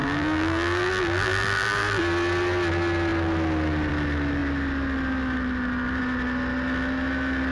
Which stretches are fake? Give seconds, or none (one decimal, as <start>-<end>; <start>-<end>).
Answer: 0.0-2.0